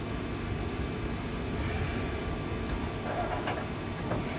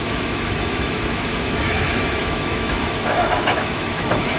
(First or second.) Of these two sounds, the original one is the first